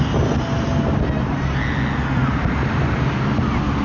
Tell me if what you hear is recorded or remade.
recorded